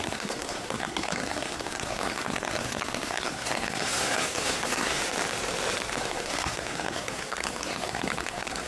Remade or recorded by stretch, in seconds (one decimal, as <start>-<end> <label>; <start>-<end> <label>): 0.0-5.0 remade; 5.0-6.0 recorded; 6.0-8.7 remade